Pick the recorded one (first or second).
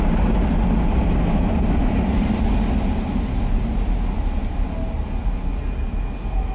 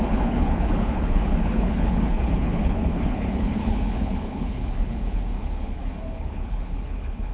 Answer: first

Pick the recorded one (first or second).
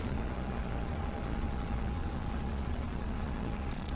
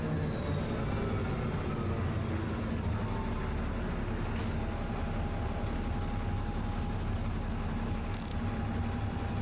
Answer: second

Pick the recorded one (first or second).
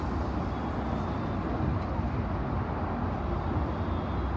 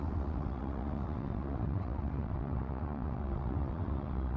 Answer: first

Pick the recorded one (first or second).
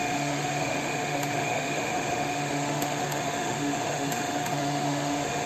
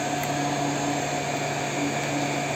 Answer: second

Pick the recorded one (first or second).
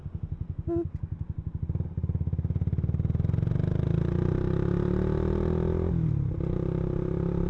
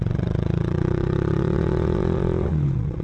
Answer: first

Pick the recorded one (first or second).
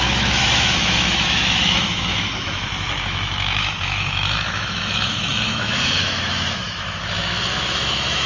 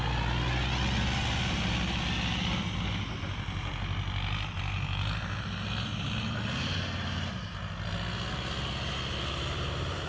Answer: second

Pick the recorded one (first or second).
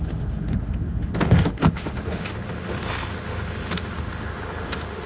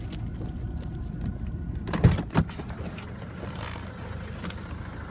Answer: second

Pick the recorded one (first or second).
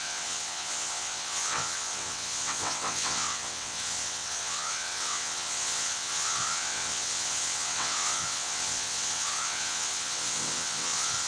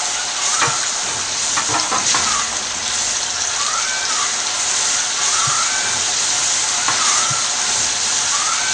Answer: second